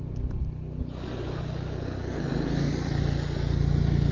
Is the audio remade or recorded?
recorded